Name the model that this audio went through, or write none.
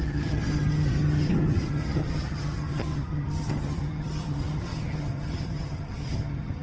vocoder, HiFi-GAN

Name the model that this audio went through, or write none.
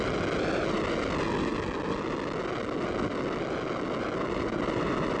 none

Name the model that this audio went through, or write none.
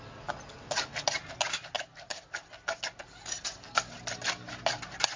none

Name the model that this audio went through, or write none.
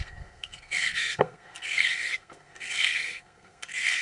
codec, SNAC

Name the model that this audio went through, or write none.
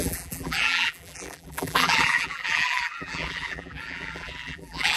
vocoder, BigVGAN v2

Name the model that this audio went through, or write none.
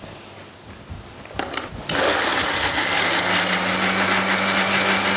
none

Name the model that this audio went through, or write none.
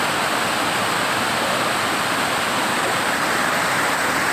none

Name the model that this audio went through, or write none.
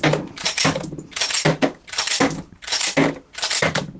none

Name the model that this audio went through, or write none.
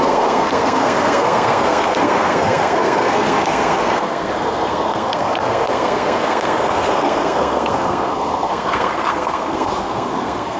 codec, SNAC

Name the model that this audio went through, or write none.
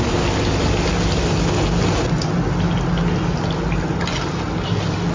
none